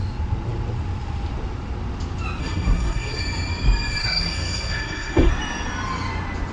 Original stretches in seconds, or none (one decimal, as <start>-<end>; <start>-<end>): 0.0-2.4; 3.2-4.0; 5.3-6.5